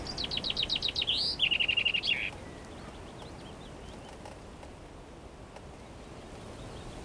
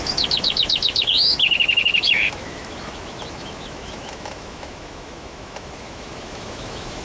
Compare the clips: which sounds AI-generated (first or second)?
second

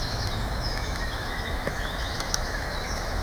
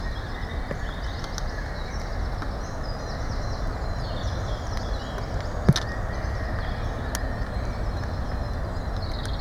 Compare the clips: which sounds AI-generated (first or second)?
first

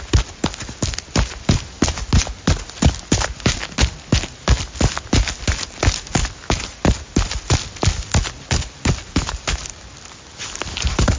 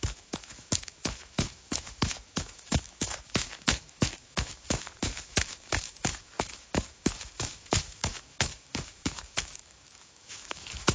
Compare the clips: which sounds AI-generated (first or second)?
second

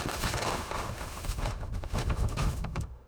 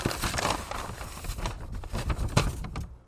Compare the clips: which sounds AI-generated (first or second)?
first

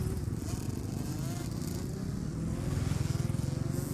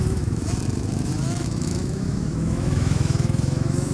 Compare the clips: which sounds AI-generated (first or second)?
second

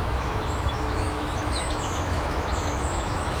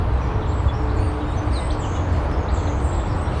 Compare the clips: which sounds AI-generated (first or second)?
first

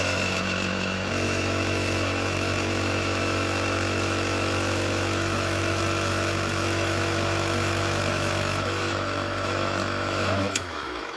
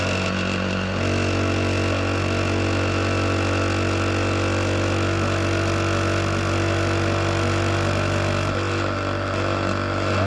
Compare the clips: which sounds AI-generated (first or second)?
first